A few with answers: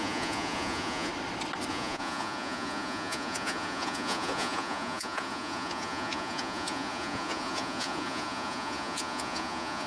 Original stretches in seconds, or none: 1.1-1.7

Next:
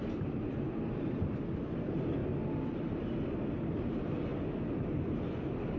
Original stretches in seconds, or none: 0.5-5.8

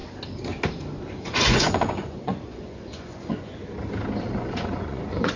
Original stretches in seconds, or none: 0.0-1.2; 3.6-4.2